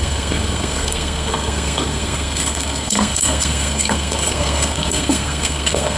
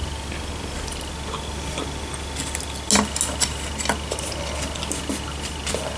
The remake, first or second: first